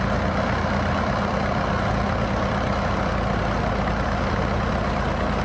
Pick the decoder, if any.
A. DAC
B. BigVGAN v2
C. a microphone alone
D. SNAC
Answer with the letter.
C